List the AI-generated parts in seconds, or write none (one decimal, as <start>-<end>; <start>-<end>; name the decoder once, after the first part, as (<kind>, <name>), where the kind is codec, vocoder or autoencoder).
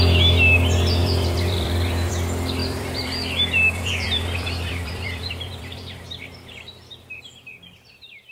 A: 1.0-2.1 (vocoder, BigVGAN v2); 2.6-7.2